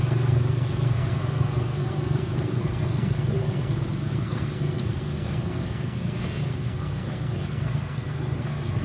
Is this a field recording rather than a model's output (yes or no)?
no